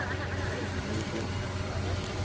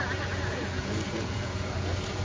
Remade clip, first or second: second